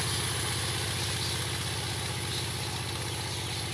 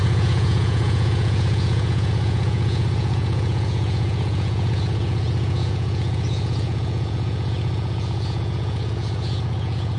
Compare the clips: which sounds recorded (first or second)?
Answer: first